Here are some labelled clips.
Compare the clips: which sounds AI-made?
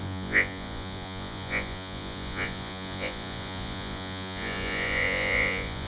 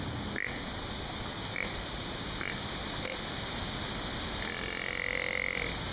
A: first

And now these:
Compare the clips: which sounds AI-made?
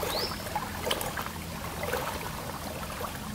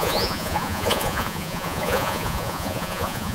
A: second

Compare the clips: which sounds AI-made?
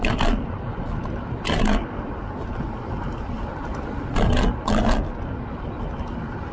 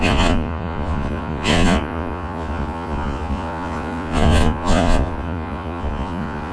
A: second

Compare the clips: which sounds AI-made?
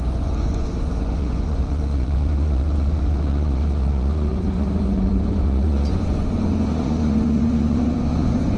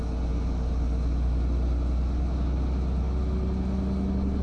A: first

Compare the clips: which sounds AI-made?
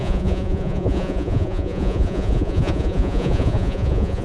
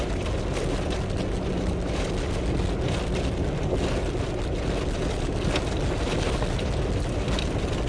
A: first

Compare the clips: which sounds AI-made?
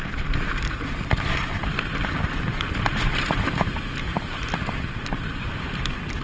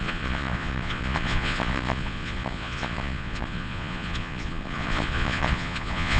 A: second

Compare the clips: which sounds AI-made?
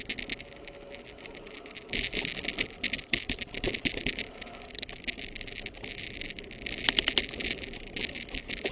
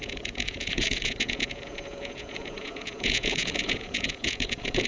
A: second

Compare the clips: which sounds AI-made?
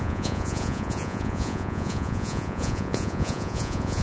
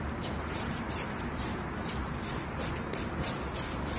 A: first